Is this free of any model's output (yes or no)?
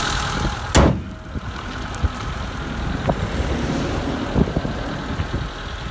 yes